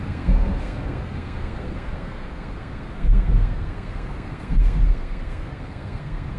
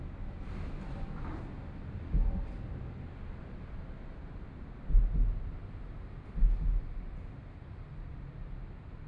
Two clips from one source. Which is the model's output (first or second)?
first